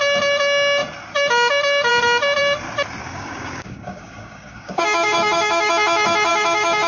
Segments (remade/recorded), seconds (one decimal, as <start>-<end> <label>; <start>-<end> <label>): 0.0-3.0 recorded; 3.0-5.7 remade; 5.7-6.3 recorded; 6.3-6.9 remade